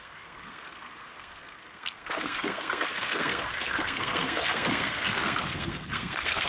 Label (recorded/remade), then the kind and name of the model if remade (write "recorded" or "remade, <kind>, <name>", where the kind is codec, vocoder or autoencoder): remade, codec, SNAC